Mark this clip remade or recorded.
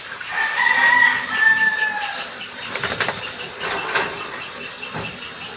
recorded